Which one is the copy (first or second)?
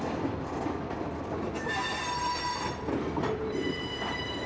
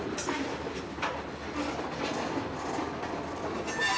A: first